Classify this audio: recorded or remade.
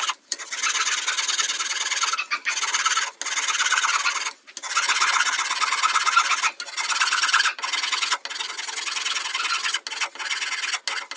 recorded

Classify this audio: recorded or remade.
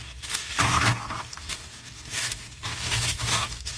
remade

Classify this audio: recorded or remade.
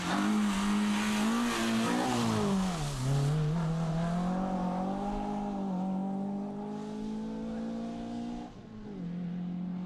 recorded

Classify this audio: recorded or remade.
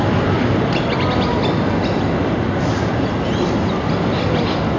recorded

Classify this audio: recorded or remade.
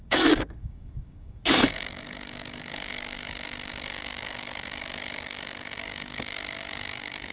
remade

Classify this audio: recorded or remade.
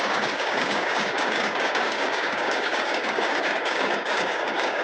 remade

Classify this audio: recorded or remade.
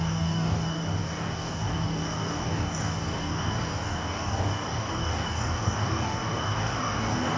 remade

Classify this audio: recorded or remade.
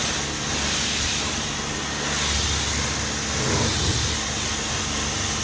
recorded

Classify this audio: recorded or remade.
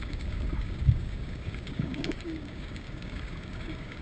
remade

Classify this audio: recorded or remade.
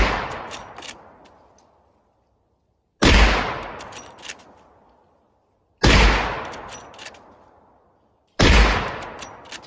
recorded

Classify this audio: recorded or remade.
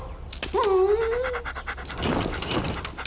recorded